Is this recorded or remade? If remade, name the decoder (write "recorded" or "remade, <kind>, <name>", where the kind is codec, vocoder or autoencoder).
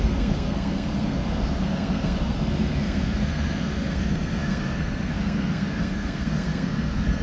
remade, codec, SNAC